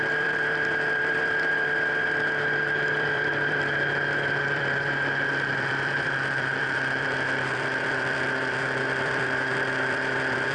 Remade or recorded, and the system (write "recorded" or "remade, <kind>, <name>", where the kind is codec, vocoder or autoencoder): remade, vocoder, BigVGAN v2